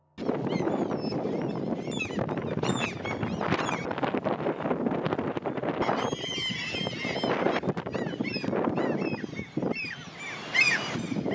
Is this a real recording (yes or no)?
yes